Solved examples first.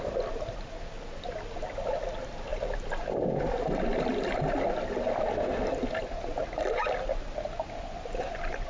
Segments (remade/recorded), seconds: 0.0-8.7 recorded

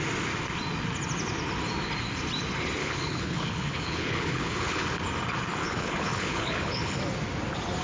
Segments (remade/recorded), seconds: 0.0-2.8 recorded; 2.8-5.0 remade; 5.0-5.5 recorded; 5.5-7.0 remade; 7.0-7.8 recorded

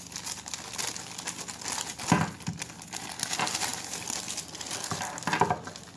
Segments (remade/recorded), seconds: 0.0-6.0 recorded

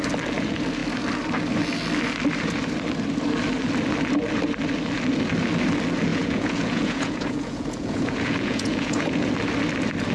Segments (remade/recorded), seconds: 0.0-6.1 recorded; 6.1-9.3 remade; 9.3-10.1 recorded

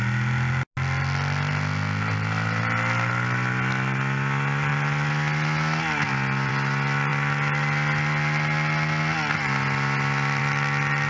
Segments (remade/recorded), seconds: 0.0-11.1 recorded

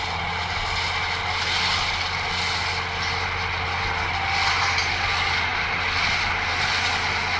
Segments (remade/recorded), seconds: 0.0-7.4 recorded

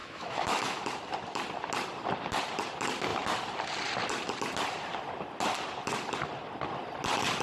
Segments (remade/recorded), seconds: 0.0-0.8 remade; 0.8-7.4 recorded

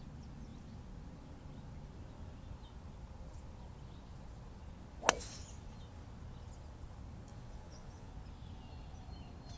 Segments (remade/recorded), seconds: 0.0-7.3 recorded; 7.3-8.1 remade; 8.1-9.6 recorded